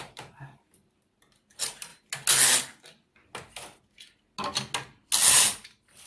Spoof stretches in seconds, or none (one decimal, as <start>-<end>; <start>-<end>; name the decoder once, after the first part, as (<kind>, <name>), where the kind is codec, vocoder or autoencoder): 0.0-1.9 (vocoder, BigVGAN v2); 5.3-6.1